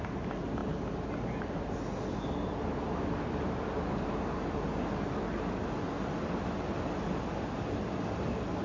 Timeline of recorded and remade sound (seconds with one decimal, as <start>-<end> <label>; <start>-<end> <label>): 0.0-8.6 recorded